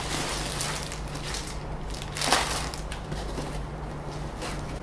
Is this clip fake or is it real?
real